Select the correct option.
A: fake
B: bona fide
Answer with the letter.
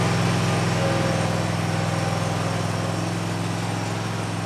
B